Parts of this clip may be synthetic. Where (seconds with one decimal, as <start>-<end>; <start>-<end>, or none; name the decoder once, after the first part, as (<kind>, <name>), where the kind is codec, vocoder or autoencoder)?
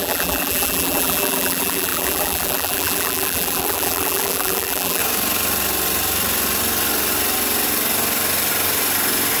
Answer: 0.0-5.0 (vocoder, BigVGAN v2)